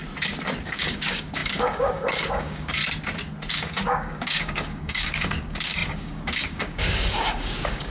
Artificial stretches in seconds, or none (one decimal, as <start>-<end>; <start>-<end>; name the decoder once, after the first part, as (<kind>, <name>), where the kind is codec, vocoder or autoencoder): 0.7-2.8 (codec, DAC); 3.5-7.9